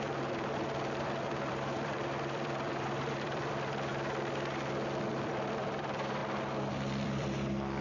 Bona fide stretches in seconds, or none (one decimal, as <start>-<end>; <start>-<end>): 3.9-4.7; 6.2-6.7